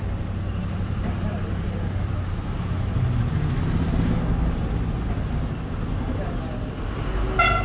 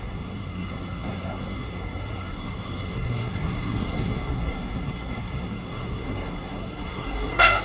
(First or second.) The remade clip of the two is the second